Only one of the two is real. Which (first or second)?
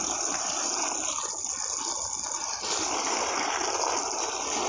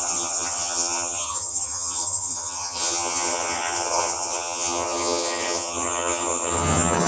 first